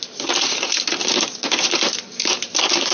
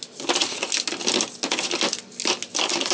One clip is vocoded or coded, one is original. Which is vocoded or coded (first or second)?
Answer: first